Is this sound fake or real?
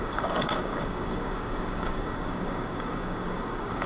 fake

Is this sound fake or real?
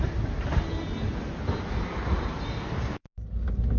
real